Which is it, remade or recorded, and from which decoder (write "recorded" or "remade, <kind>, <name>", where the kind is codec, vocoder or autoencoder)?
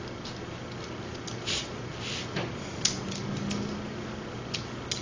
recorded